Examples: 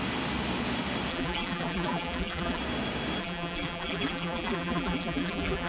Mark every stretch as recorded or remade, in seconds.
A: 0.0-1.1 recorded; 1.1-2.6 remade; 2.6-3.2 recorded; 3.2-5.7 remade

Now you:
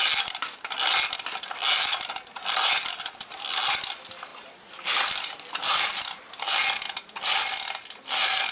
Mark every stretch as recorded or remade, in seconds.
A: 0.0-8.5 recorded

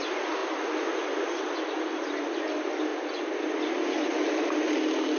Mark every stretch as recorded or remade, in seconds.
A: 0.0-5.2 recorded

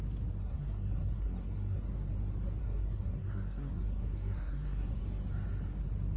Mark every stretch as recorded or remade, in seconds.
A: 0.0-0.4 recorded; 0.4-1.8 remade; 1.8-2.6 recorded; 2.6-5.0 remade; 5.0-6.2 recorded

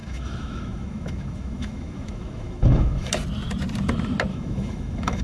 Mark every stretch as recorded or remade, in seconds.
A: 0.0-3.1 remade; 3.1-4.3 recorded; 4.3-5.2 remade

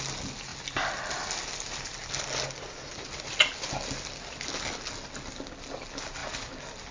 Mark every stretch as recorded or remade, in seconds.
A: 0.0-6.9 recorded

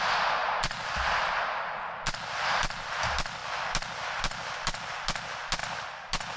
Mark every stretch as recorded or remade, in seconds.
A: 0.0-6.4 recorded